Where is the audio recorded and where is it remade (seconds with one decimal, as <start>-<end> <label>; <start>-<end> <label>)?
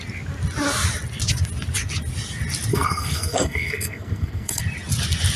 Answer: 0.0-2.7 recorded; 2.7-4.6 remade; 4.6-5.4 recorded